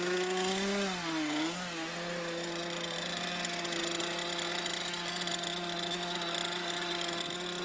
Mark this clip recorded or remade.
recorded